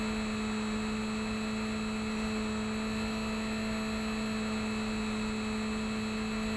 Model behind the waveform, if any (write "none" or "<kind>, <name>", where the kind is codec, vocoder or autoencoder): none